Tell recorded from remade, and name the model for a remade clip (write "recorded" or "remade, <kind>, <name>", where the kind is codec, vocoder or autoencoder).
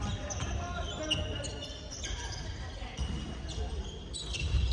recorded